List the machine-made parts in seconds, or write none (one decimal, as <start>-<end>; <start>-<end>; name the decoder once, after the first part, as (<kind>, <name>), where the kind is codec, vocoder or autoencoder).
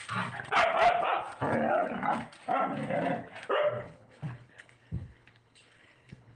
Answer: 3.8-6.4 (codec, HILCodec)